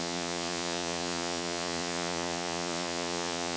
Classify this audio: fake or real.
fake